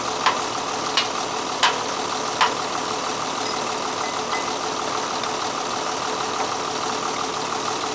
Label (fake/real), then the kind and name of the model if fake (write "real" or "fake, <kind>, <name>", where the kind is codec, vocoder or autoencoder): real